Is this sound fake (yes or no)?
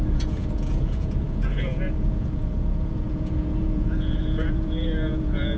yes